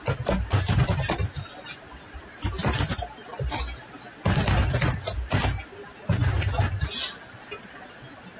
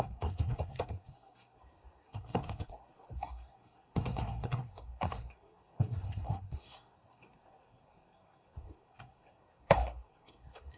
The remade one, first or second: second